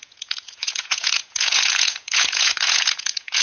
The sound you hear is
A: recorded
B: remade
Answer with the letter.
B